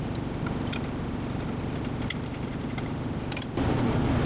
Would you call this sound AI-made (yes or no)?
no